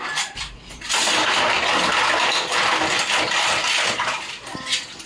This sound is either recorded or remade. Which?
recorded